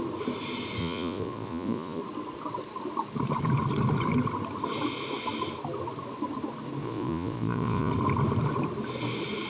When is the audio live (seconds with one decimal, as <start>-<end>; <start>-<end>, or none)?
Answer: 0.0-0.8; 2.0-6.8; 7.9-9.5